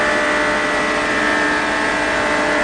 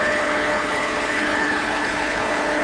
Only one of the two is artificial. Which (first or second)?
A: second